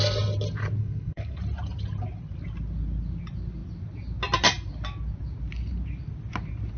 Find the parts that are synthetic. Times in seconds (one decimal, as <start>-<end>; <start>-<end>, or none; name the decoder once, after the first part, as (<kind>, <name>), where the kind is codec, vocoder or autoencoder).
0.8-1.4 (codec, HILCodec)